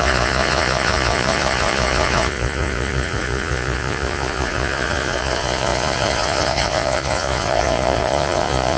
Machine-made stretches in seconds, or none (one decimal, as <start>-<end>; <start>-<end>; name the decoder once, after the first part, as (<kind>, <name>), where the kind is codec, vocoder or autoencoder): 0.0-8.8 (vocoder, Vocos)